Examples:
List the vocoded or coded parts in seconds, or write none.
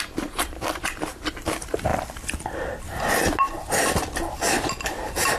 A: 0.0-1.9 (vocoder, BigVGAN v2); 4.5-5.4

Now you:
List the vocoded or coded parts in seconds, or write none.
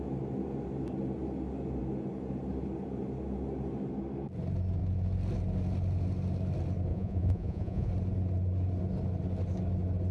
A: 6.9-7.9 (vocoder, Vocos)